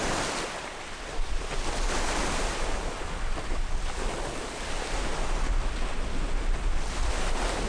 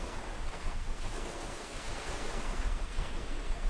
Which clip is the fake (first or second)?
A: second